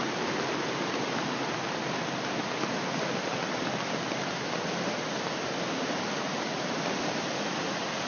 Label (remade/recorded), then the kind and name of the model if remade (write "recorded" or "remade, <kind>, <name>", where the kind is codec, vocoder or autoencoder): recorded